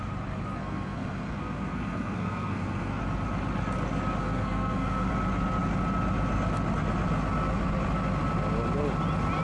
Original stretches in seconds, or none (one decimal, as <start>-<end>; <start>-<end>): 0.0-0.6; 3.0-4.2; 5.1-9.4